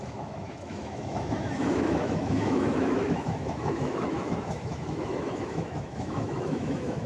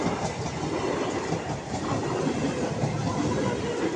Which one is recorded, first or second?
second